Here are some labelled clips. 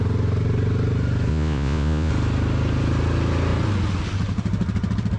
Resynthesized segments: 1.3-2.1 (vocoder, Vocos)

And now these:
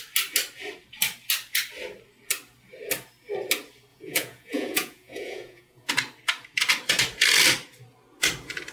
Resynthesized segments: 3.9-5.9 (vocoder, Vocos)